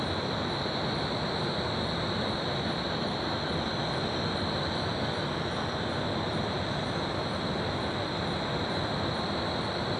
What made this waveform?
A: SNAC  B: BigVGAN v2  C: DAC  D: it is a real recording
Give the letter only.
D